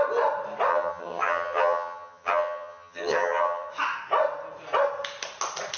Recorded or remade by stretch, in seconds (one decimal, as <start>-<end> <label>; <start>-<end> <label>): 0.0-0.7 recorded; 0.7-3.7 remade; 3.7-5.8 recorded